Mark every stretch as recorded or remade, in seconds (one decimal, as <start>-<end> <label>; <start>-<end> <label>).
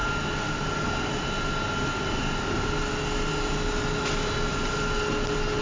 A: 0.0-5.6 recorded